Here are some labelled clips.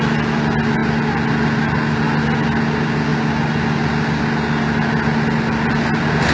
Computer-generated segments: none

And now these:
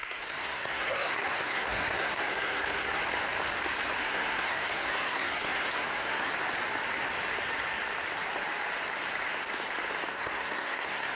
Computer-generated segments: 0.0-3.0; 4.0-6.3; 10.1-11.1

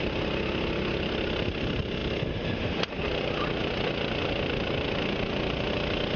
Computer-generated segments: none

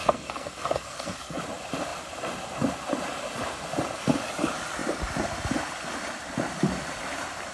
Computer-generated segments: 0.0-1.4

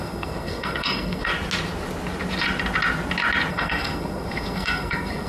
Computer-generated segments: 0.0-1.3; 3.5-5.3

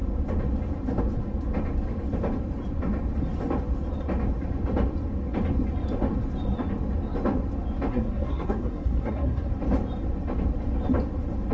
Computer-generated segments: 7.9-9.5